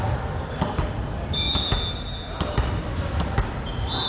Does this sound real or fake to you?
real